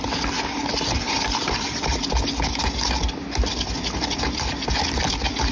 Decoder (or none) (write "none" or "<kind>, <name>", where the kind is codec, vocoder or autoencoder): none